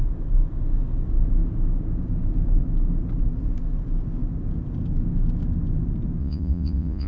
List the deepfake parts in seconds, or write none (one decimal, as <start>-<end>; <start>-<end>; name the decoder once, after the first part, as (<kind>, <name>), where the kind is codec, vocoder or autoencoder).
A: 6.2-7.1 (vocoder, Vocos)